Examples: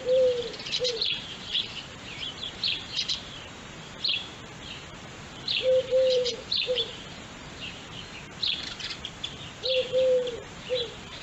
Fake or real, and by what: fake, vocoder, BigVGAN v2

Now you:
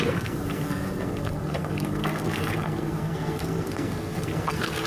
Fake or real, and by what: fake, codec, SNAC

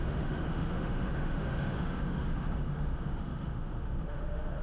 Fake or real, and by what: fake, autoencoder, DAC-VAE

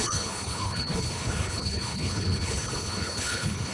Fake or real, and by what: fake, codec, HILCodec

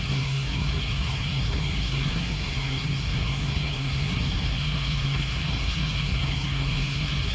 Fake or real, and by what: fake, codec, SNAC